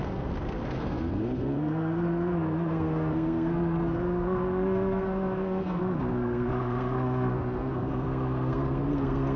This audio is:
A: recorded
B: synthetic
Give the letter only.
B